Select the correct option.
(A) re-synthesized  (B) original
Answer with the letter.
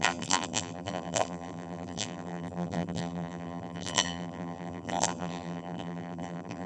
A